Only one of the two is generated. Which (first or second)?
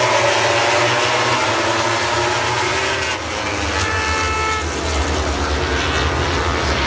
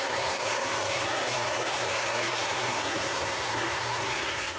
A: second